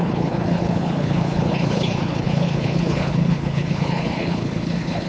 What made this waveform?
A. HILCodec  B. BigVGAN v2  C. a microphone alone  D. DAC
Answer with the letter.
A